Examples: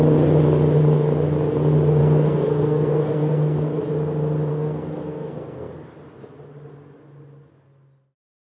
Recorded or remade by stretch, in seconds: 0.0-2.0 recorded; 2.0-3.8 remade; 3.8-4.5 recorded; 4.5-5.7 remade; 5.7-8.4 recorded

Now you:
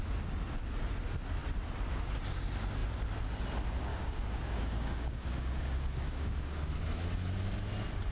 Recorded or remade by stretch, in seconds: 0.0-3.9 recorded; 3.9-6.7 remade; 6.7-8.1 recorded

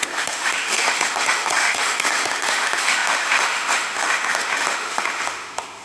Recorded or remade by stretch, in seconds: 0.0-5.8 remade